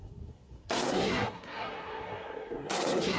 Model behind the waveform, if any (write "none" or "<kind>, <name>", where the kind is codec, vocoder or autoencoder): codec, SNAC